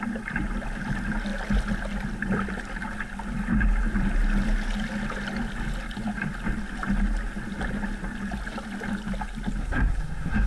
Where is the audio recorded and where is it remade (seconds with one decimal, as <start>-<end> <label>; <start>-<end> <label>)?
0.0-9.6 recorded; 9.6-10.5 remade